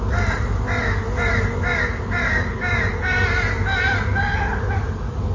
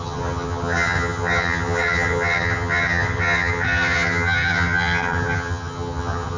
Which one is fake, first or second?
second